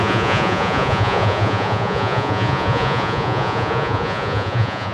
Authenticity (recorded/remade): remade